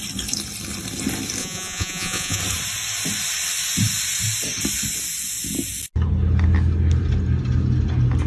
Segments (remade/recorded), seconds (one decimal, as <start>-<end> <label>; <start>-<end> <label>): 0.0-1.4 recorded; 1.4-2.4 remade; 2.4-8.3 recorded